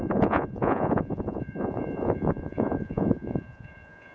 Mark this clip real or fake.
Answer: fake